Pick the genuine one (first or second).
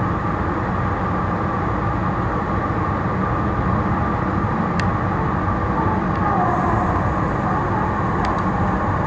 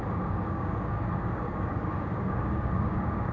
first